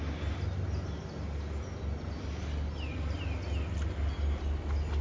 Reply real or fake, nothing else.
real